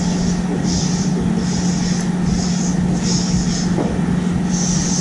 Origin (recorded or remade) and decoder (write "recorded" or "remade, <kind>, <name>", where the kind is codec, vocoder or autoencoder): recorded